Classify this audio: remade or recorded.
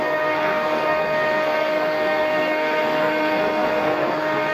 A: remade